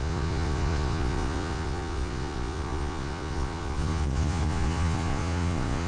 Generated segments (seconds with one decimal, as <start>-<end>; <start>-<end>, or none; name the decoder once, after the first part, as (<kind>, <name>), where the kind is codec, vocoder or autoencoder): 0.0-5.9 (vocoder, Vocos)